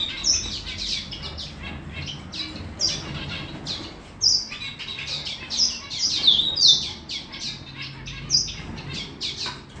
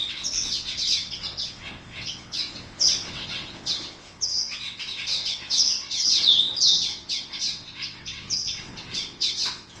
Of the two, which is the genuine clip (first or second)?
first